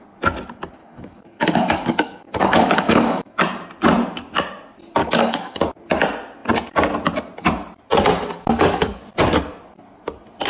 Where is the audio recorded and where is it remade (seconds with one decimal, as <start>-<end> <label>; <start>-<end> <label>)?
0.0-0.8 recorded; 0.8-3.4 remade; 3.4-5.0 recorded; 5.0-5.6 remade; 5.6-8.3 recorded; 8.3-9.0 remade; 9.0-10.5 recorded